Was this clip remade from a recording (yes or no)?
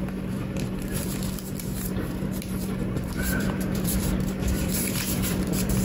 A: yes